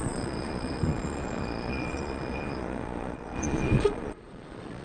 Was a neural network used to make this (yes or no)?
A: yes